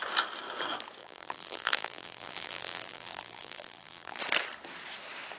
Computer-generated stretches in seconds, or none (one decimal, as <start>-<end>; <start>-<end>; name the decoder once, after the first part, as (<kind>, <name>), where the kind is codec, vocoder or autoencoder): 1.0-4.2 (vocoder, BigVGAN v2)